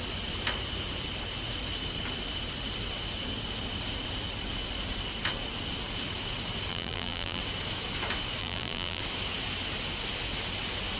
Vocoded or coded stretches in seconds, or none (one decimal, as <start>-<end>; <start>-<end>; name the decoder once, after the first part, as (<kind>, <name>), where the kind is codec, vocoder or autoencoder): 6.7-7.4 (vocoder, BigVGAN v2); 8.4-9.0